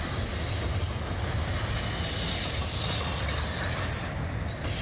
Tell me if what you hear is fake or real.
real